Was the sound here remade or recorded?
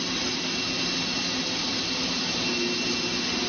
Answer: recorded